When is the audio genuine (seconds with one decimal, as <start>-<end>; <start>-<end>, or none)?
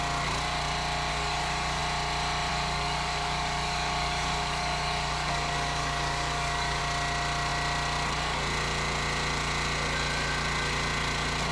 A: 0.0-1.1; 1.8-2.5; 6.8-11.5